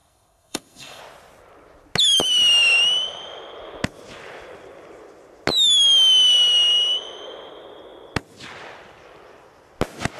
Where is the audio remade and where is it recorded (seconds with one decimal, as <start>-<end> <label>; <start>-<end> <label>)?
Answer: 0.0-1.0 remade; 1.0-10.2 recorded